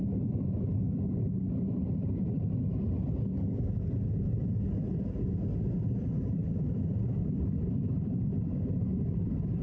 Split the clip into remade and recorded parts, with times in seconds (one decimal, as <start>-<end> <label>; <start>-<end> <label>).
0.0-9.6 recorded

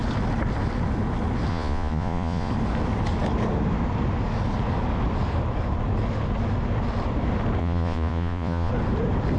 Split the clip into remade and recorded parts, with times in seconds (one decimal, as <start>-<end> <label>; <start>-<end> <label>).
0.0-1.5 recorded; 1.5-2.5 remade; 2.5-7.6 recorded; 7.6-8.7 remade; 8.7-9.4 recorded

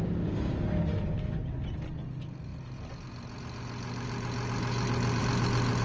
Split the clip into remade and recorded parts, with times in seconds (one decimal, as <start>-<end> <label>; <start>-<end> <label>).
0.0-5.8 recorded

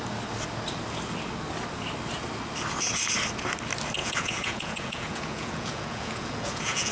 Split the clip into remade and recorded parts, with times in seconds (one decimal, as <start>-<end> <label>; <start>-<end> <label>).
0.0-4.0 recorded; 4.0-6.9 remade

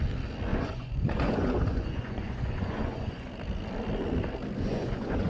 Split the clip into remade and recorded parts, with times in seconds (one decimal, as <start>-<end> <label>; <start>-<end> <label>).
0.0-0.5 recorded; 0.5-3.3 remade; 3.3-4.6 recorded; 4.6-5.3 remade

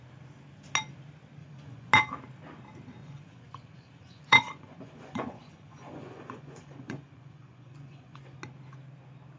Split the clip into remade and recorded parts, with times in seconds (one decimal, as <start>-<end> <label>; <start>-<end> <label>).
0.0-1.4 recorded; 1.4-1.9 remade; 1.9-3.0 recorded; 3.0-8.2 remade; 8.2-9.4 recorded

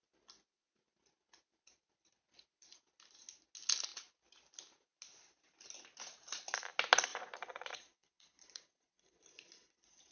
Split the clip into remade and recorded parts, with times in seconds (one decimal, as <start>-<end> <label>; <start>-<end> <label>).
0.0-7.1 recorded; 7.1-10.1 remade